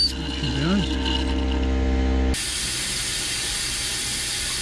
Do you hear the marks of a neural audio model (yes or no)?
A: no